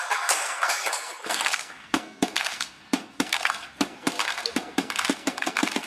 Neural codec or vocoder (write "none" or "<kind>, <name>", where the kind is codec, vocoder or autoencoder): codec, SNAC